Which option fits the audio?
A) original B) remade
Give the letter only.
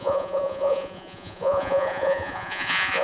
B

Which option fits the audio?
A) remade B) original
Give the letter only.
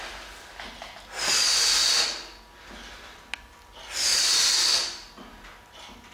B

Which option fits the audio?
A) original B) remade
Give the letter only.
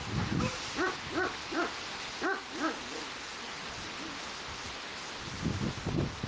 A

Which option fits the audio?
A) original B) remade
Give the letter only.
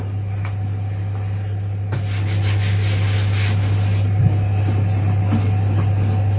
A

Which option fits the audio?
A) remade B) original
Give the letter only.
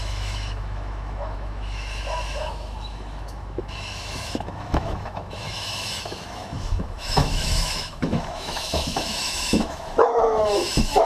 A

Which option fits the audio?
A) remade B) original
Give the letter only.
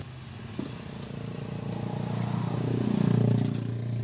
B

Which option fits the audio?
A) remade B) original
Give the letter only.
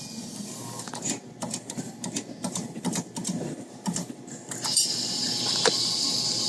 A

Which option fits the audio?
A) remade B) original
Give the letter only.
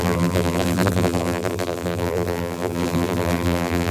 A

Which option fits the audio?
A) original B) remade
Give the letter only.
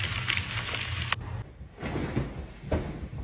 A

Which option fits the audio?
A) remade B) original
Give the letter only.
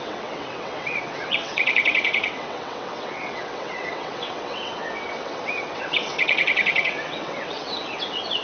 A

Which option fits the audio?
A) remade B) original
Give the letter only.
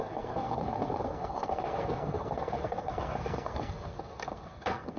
A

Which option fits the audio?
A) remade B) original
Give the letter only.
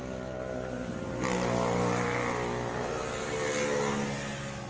B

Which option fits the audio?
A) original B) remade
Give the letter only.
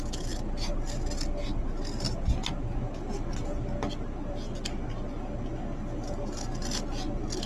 A